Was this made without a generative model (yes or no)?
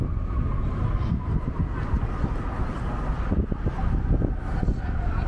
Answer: yes